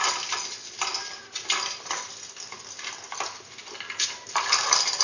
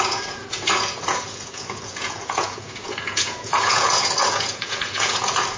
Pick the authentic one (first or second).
first